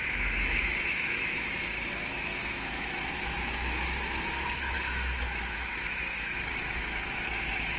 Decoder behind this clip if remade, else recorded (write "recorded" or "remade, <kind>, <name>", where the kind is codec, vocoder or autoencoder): remade, autoencoder, DAC-VAE